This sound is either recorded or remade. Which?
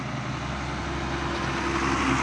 recorded